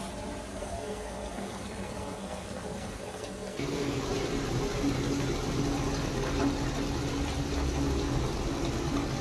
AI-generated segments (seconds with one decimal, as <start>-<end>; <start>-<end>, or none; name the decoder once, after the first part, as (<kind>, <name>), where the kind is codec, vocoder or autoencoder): 0.5-4.0 (codec, SNAC)